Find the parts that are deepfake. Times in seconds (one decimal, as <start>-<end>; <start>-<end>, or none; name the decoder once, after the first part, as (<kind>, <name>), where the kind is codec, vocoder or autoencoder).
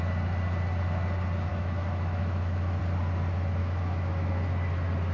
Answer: 1.5-2.8 (autoencoder, DAC-VAE); 3.6-4.3